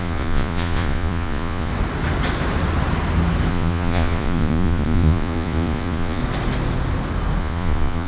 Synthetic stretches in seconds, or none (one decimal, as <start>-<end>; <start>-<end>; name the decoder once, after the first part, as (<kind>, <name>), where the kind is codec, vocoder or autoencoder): 0.0-1.7 (vocoder, Vocos); 3.5-6.2; 7.4-8.1